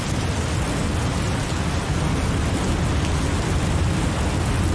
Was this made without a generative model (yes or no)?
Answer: yes